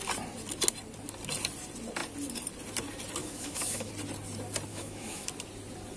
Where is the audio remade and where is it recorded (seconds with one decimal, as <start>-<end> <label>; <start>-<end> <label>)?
0.0-3.2 recorded; 3.2-3.9 remade; 3.9-4.7 recorded; 4.7-5.3 remade; 5.3-6.0 recorded